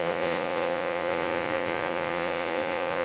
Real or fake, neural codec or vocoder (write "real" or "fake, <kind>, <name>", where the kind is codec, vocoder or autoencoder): fake, vocoder, Vocos